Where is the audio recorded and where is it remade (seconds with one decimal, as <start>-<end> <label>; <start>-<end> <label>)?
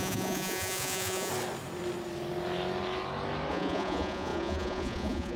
0.0-1.3 remade; 1.3-3.5 recorded; 3.5-5.4 remade